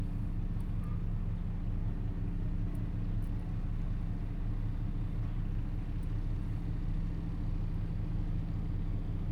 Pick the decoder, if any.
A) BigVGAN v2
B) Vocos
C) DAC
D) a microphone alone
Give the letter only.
D